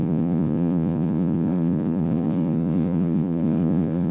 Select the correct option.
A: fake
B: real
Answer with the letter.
A